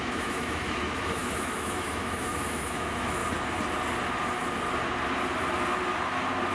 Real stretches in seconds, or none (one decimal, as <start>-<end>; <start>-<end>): 3.2-6.5

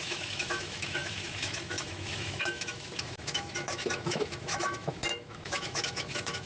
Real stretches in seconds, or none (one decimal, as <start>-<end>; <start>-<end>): none

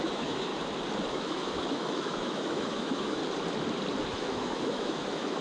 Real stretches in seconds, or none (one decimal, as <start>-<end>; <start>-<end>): 0.5-1.1; 3.2-4.2